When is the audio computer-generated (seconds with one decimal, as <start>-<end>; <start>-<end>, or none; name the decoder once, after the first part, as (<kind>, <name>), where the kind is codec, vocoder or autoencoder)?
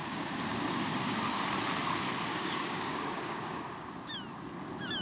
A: 0.0-1.5 (codec, DAC); 2.3-3.6